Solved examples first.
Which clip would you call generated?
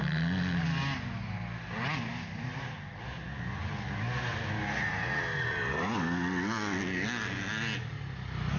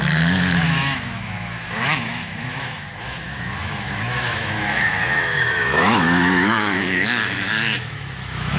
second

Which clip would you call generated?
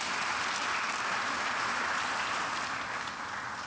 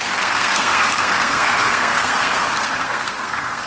second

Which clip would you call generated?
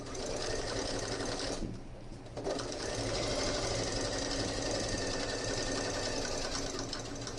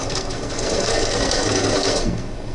second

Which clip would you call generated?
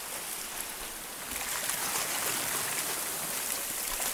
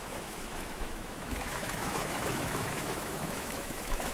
second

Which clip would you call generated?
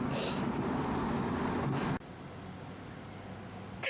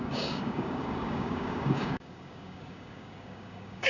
second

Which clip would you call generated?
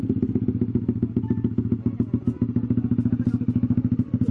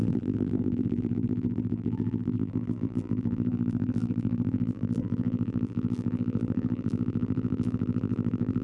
second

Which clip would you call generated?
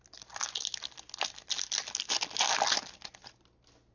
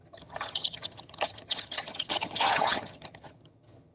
second